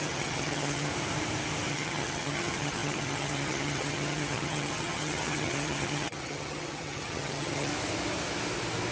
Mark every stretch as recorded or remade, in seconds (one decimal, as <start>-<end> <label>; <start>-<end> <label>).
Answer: 0.0-0.9 remade; 0.9-1.7 recorded; 1.7-7.7 remade; 7.7-8.9 recorded